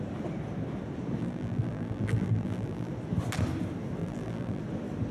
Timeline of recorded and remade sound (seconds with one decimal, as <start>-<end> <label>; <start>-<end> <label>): 0.0-1.2 recorded; 1.2-2.9 remade; 2.9-4.0 recorded; 4.0-4.6 remade; 4.6-5.1 recorded